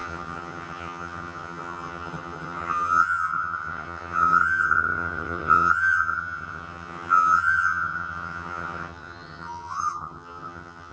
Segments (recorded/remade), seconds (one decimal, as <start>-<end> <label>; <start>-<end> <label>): 0.0-10.9 remade